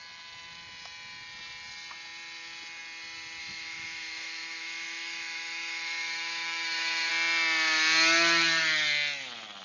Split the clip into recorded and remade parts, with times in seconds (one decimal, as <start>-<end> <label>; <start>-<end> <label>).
0.0-3.4 recorded; 3.4-7.1 remade; 7.1-9.6 recorded

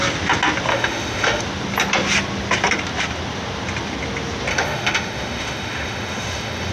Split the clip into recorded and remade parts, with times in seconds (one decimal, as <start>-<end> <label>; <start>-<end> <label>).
0.0-0.7 recorded; 0.7-1.4 remade; 1.4-4.5 recorded; 4.5-6.7 remade

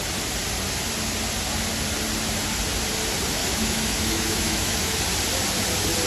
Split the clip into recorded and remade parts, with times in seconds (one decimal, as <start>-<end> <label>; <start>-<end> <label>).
0.0-3.4 recorded; 3.4-5.0 remade; 5.0-6.1 recorded

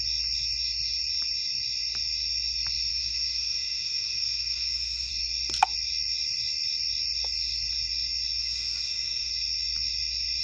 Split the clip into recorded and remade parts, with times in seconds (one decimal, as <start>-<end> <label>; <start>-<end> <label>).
0.0-2.9 recorded; 2.9-5.1 remade; 5.1-8.4 recorded; 8.4-9.3 remade; 9.3-10.4 recorded

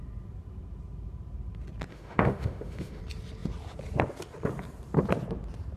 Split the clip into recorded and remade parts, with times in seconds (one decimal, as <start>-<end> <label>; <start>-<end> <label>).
0.0-1.9 recorded; 1.9-3.0 remade; 3.0-5.8 recorded

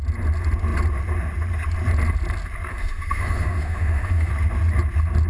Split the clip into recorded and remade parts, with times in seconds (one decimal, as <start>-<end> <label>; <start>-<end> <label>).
0.0-2.7 recorded; 2.7-4.3 remade; 4.3-5.3 recorded

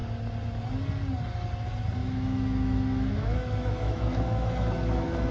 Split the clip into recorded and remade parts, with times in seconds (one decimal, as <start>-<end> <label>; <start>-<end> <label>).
0.0-2.0 recorded; 2.0-5.3 remade